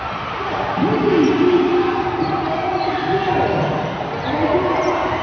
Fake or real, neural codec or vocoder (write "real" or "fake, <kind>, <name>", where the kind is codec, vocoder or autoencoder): real